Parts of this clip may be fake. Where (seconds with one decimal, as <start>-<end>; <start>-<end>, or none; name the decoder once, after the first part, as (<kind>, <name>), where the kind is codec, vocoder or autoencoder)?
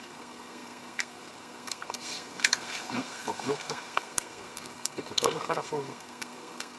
0.0-6.8 (codec, SNAC)